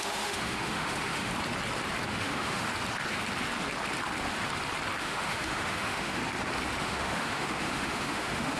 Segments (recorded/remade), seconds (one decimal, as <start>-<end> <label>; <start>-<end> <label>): 0.0-1.3 remade; 1.3-2.1 recorded; 2.1-2.7 remade; 2.7-5.0 recorded; 5.0-6.2 remade; 6.2-6.8 recorded; 6.8-8.6 remade